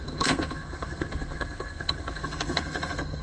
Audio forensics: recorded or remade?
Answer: remade